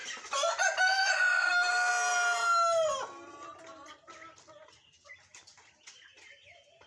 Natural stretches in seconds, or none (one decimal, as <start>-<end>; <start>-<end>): 0.0-6.9